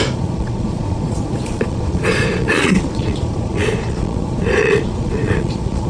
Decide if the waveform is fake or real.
fake